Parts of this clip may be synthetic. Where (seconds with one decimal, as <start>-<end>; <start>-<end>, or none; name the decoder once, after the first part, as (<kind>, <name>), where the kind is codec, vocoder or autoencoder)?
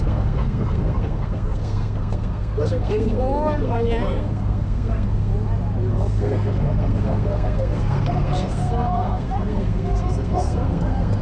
0.0-5.3 (codec, SNAC); 5.9-11.2